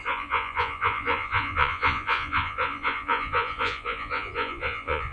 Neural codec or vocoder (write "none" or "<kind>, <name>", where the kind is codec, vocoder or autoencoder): vocoder, Vocos